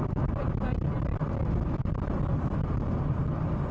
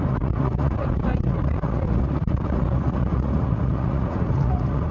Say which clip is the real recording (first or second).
first